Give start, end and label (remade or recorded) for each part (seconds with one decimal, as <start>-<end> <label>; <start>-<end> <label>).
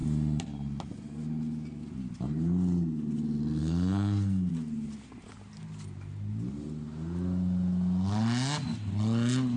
0.0-3.6 recorded; 3.6-4.5 remade; 4.5-9.6 recorded